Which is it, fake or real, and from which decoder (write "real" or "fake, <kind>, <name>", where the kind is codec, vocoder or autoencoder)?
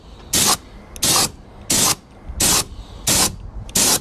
real